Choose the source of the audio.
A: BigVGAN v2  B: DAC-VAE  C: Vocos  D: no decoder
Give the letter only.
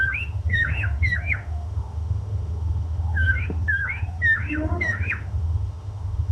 B